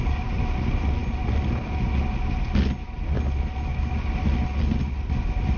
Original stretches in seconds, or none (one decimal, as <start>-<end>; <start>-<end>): 0.0-5.6